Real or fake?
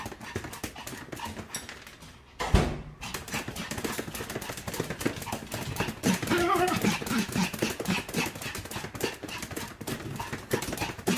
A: real